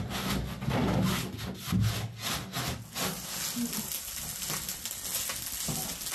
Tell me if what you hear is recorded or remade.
recorded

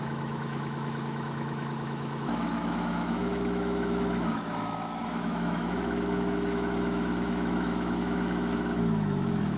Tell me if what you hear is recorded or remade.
remade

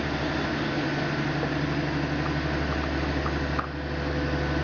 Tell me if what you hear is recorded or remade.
recorded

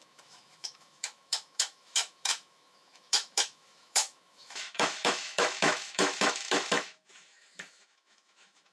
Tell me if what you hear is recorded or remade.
remade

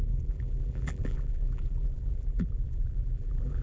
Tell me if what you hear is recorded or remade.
remade